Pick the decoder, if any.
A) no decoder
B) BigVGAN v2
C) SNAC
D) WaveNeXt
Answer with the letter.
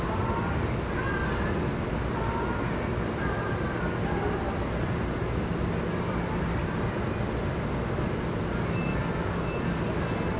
A